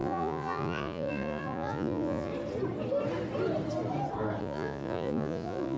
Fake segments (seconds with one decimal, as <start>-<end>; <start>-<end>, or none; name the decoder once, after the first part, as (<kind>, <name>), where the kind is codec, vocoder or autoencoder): 0.0-2.3 (vocoder, Vocos); 4.4-5.8

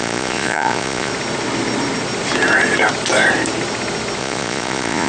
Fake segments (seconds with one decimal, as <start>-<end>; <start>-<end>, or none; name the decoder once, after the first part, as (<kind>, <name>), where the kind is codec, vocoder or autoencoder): 0.0-1.1 (vocoder, Vocos); 4.2-5.1

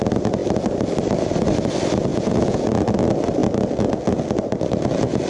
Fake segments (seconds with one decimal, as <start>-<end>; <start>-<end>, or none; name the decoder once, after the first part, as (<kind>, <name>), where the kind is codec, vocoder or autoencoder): 2.1-2.7 (vocoder, Vocos)

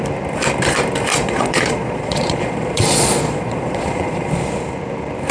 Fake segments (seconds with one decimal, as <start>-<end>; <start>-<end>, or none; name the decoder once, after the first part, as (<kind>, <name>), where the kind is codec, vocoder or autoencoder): 1.1-4.3 (vocoder, Vocos)

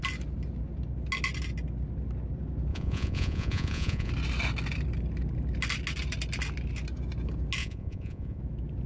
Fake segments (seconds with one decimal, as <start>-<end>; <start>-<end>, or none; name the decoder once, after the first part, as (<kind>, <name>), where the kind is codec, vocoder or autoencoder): 2.7-4.1 (vocoder, Vocos); 7.6-8.4

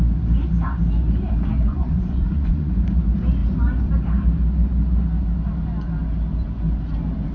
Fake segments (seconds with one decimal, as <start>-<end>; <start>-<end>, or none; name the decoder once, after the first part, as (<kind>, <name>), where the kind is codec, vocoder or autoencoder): 1.7-2.7 (vocoder, Vocos)